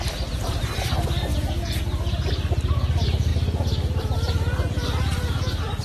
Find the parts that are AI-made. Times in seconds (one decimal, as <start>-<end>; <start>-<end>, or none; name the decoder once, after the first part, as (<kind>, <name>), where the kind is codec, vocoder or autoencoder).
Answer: none